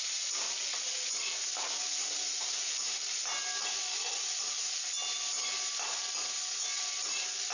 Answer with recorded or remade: recorded